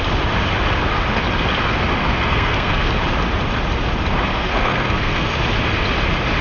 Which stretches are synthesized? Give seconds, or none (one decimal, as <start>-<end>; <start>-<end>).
2.0-2.9; 4.3-5.3